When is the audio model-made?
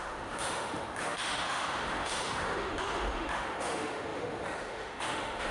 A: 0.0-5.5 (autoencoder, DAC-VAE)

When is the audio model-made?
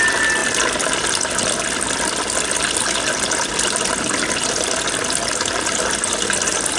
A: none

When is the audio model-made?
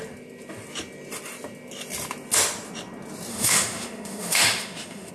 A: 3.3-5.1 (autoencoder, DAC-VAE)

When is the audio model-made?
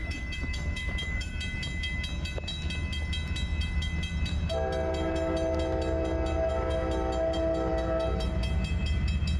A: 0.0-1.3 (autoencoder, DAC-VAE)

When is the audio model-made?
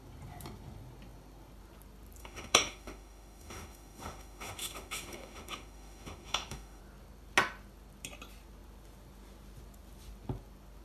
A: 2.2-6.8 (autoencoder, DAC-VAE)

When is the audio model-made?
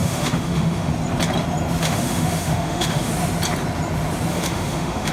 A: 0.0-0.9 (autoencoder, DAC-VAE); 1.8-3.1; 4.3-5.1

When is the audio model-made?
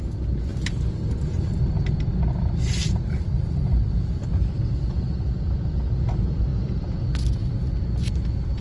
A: none